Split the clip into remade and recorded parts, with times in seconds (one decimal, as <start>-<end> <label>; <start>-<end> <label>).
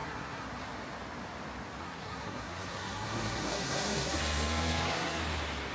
0.0-0.5 remade; 0.5-1.8 recorded; 1.8-5.2 remade; 5.2-5.7 recorded